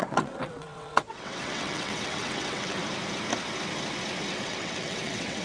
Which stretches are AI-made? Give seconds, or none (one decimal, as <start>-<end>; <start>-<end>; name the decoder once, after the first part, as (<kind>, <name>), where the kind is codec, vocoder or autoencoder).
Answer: 0.0-2.8 (vocoder, WaveNeXt); 4.3-5.4